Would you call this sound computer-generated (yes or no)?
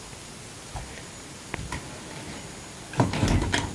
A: no